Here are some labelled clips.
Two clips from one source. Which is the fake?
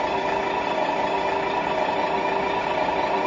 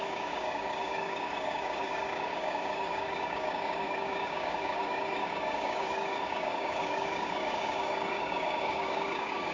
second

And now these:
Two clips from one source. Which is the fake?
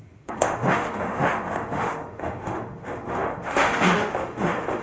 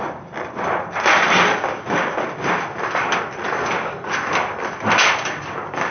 first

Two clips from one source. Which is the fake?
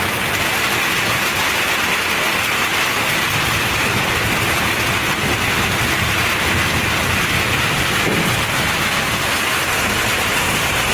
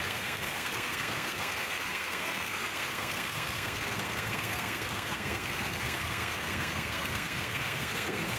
second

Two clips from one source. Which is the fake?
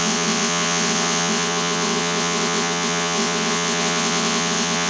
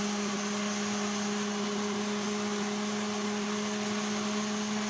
first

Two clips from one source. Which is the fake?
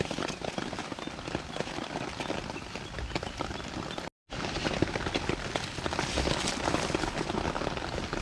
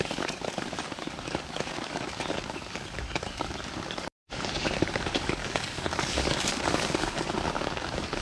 second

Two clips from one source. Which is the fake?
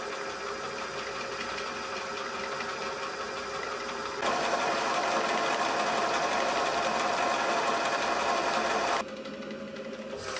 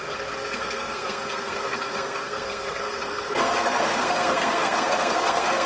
second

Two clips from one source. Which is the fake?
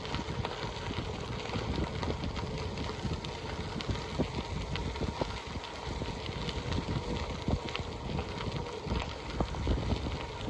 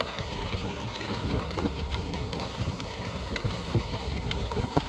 second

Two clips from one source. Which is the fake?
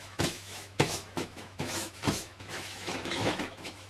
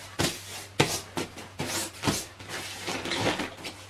first